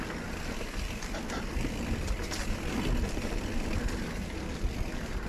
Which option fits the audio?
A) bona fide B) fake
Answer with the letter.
A